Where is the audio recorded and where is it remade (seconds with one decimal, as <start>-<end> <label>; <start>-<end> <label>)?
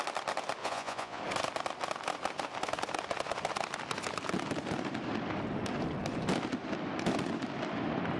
0.0-0.6 recorded; 0.6-1.2 remade; 1.2-8.2 recorded